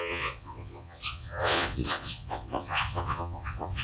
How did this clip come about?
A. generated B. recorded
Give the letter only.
A